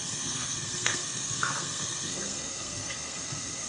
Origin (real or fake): fake